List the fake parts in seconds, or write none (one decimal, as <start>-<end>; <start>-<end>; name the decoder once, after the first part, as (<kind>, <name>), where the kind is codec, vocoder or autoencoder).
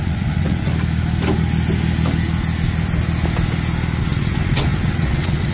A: 0.0-0.7 (vocoder, WaveNeXt); 4.0-5.5